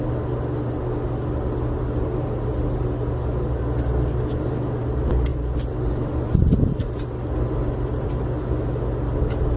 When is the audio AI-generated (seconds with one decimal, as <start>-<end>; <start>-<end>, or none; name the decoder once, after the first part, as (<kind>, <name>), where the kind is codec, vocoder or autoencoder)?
5.3-8.1 (vocoder, BigVGAN v2)